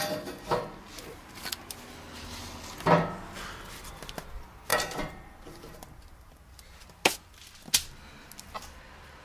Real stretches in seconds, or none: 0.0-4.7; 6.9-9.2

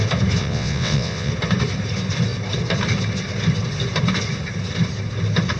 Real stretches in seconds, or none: 0.0-0.4; 1.3-5.6

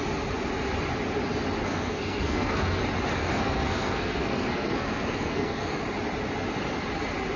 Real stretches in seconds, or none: 0.0-1.7; 2.8-3.2; 5.8-7.4

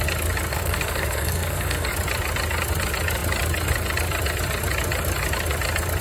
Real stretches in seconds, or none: 0.0-0.5; 1.9-6.0